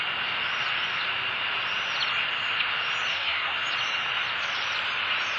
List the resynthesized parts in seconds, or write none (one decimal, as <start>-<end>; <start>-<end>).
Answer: 3.1-3.6

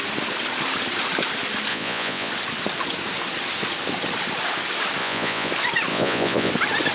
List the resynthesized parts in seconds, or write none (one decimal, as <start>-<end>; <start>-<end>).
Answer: 1.7-2.3; 5.0-5.5; 5.9-6.5